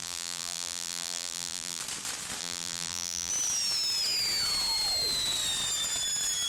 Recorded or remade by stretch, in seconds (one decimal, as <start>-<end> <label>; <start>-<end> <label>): 0.0-1.8 remade; 1.8-2.4 recorded; 2.4-3.3 remade; 3.3-6.5 recorded